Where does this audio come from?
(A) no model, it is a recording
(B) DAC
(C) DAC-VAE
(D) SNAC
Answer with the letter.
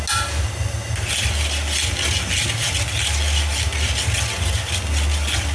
A